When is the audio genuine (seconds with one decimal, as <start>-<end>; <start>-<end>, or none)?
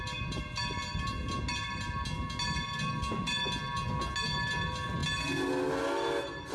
0.0-6.5